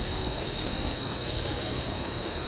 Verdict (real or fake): fake